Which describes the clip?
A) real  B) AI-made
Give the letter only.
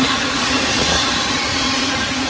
B